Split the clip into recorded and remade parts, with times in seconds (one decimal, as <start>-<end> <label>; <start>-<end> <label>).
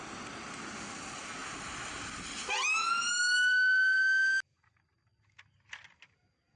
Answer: 0.0-6.6 recorded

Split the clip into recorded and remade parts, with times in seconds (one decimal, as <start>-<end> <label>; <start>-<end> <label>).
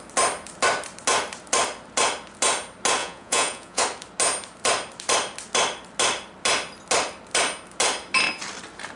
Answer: 0.0-3.0 recorded; 3.0-3.8 remade; 3.8-9.0 recorded